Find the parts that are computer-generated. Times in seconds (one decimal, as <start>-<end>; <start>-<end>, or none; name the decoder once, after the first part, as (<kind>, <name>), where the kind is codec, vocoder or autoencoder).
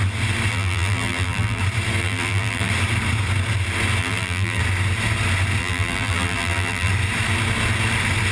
0.5-1.6 (vocoder, BigVGAN v2); 2.0-2.7; 4.0-4.6; 5.6-6.9